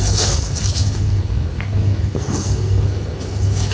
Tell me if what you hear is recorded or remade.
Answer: remade